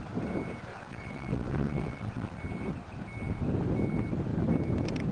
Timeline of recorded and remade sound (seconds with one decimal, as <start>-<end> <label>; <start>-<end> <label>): 0.0-0.7 recorded; 0.7-2.4 remade; 2.4-5.1 recorded